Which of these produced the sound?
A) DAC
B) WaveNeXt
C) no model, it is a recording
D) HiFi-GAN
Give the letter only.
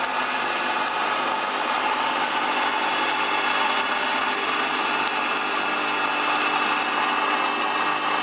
C